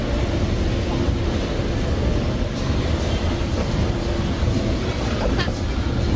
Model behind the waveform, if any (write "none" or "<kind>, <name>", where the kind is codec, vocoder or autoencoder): none